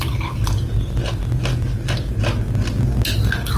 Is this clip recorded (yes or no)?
yes